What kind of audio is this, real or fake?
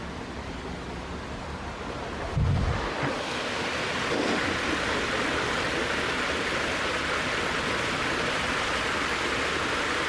real